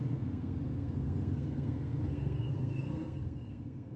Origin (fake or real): fake